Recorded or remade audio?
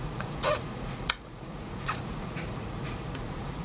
remade